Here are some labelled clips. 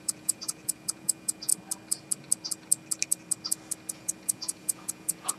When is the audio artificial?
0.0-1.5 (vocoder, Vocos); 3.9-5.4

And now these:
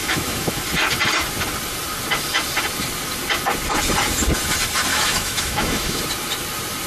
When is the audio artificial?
0.0-0.6 (autoencoder, DAC-VAE); 4.9-6.0

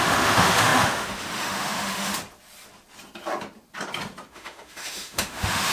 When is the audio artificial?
0.0-2.1 (autoencoder, DAC-VAE); 4.3-5.7

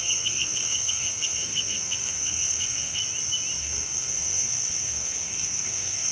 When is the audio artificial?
0.0-3.0 (codec, SNAC); 3.6-6.1

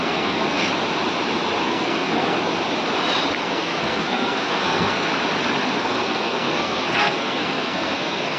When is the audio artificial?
0.0-0.7 (codec, SNAC); 1.6-2.5; 3.4-5.1; 5.8-8.4

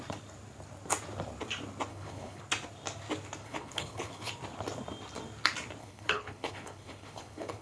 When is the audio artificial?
1.9-2.4 (codec, HILCodec); 3.4-4.3; 5.8-7.6

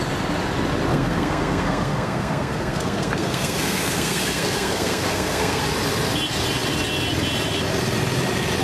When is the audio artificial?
0.9-5.6 (codec, SNAC)

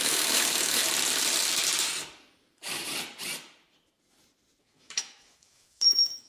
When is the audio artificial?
0.0-0.8 (autoencoder, DAC-VAE); 4.6-6.3